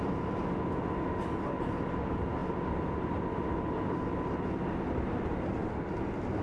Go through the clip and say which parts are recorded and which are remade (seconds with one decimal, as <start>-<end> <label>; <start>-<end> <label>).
0.0-6.4 recorded